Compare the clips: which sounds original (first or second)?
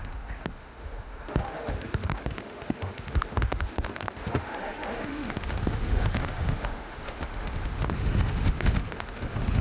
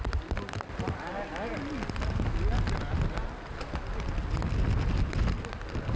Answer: second